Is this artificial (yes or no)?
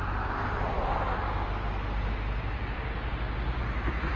no